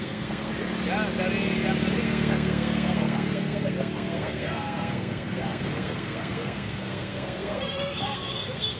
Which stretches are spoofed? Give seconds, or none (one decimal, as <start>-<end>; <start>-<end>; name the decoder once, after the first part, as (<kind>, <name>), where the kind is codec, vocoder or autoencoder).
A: 0.0-0.5 (codec, SNAC); 2.0-8.8